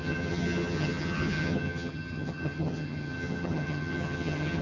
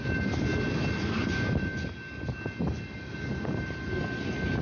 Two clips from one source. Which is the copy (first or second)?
first